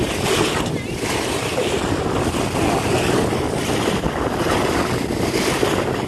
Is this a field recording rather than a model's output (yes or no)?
yes